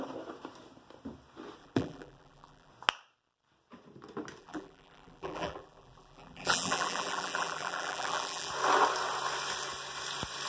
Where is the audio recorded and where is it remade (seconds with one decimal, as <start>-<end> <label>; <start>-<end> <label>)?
0.0-1.6 recorded; 1.6-2.7 remade; 2.7-4.4 recorded; 4.4-8.5 remade; 8.5-10.5 recorded